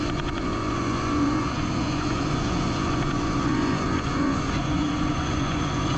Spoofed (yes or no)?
yes